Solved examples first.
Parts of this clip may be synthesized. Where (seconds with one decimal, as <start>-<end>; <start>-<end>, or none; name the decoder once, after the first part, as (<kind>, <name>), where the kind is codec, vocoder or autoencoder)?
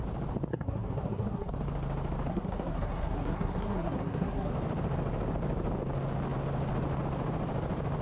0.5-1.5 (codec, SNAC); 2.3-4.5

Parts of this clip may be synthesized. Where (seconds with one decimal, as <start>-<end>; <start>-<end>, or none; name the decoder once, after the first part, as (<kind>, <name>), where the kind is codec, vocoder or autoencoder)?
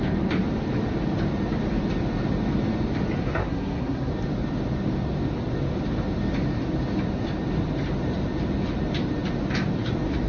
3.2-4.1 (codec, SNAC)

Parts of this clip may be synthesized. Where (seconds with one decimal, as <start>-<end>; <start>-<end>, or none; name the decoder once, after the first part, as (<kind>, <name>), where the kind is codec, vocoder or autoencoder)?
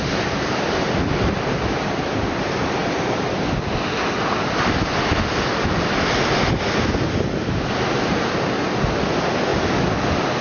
none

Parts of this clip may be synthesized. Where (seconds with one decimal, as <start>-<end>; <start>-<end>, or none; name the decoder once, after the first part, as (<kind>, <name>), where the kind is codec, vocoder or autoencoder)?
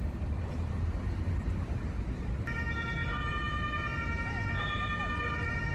none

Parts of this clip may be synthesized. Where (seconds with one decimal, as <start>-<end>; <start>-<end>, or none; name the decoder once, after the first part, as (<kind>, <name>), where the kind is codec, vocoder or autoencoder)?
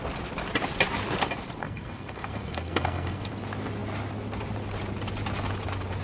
1.6-3.3 (codec, SNAC)